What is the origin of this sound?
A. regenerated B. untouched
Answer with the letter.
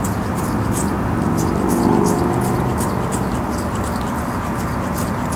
B